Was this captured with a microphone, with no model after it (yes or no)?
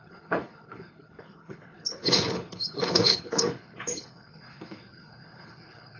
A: no